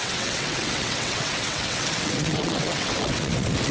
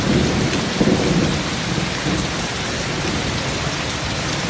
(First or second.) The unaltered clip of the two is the second